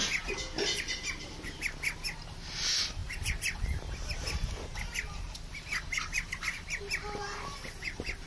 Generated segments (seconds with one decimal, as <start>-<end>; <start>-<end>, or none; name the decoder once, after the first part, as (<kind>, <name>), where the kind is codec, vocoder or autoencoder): none